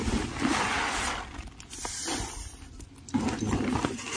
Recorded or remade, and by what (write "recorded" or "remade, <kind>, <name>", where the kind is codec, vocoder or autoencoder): recorded